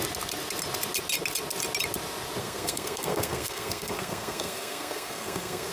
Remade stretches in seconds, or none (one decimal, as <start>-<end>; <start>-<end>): 2.4-5.7